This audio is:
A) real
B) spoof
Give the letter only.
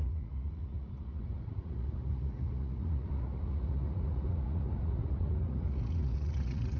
B